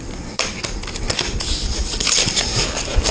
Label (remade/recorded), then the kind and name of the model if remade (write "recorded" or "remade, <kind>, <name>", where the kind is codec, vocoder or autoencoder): recorded